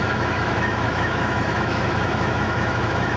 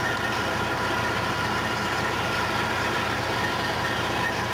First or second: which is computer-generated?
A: first